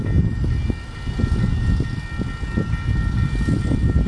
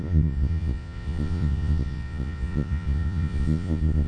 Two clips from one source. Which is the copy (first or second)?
second